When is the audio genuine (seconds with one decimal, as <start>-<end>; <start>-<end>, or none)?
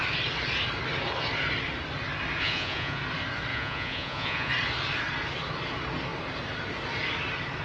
0.0-2.4; 3.0-3.5; 4.5-7.6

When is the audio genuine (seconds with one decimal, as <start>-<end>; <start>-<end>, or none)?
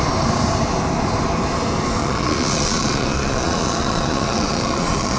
0.0-2.0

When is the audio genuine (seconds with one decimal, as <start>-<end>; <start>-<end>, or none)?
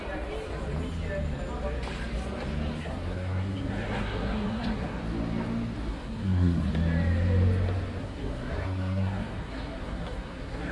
0.0-2.8; 5.0-5.9; 6.7-8.0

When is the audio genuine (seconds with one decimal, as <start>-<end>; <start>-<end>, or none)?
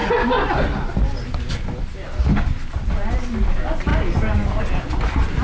0.0-5.4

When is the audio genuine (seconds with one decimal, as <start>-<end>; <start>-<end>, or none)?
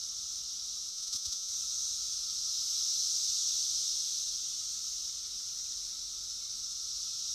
0.0-0.9; 1.5-7.3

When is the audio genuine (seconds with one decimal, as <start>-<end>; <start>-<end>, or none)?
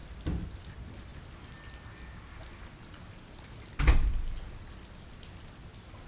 0.0-6.1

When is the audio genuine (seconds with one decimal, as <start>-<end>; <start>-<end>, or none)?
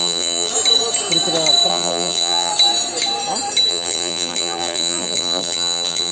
0.5-1.7; 2.5-3.7